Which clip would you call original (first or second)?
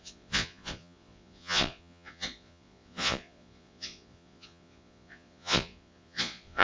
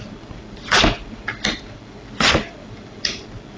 second